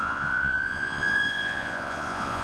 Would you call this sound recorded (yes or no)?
no